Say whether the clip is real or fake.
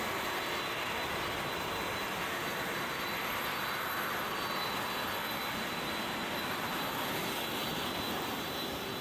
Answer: real